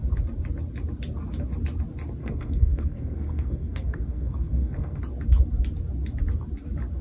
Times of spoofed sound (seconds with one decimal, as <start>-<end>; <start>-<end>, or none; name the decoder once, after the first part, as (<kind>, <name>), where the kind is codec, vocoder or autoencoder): 2.2-5.0 (codec, SNAC)